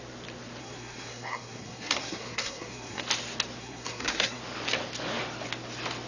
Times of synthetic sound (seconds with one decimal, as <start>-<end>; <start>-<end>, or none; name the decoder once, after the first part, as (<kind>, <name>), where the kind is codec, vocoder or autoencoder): 0.6-3.0 (codec, SNAC); 3.6-4.4